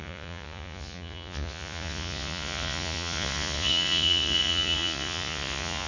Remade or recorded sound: remade